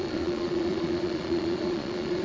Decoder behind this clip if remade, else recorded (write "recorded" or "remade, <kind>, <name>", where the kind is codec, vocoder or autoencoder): remade, vocoder, Vocos